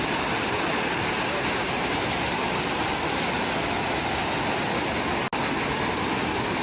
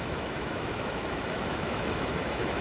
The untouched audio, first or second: first